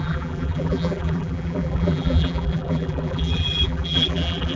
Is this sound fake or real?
fake